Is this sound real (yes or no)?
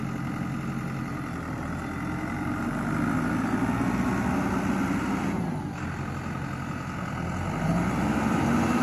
yes